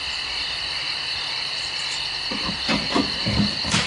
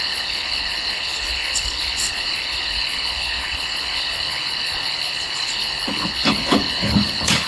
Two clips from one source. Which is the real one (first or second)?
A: first